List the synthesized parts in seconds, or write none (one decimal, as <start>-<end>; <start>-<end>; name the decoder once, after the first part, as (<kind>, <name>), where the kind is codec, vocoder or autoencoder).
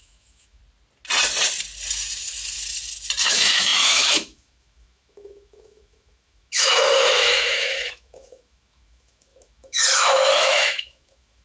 0.0-0.6 (autoencoder, DAC-VAE); 3.2-11.4